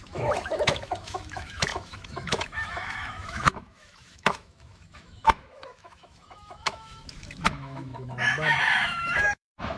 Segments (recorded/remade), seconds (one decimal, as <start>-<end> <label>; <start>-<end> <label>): 0.0-9.8 remade